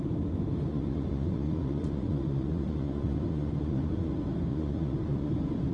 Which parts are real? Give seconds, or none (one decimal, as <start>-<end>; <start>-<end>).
0.0-0.7; 4.1-4.5; 5.3-5.7